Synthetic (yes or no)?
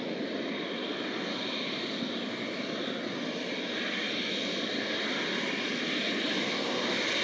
no